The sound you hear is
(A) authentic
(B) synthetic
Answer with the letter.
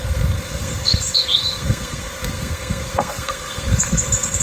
B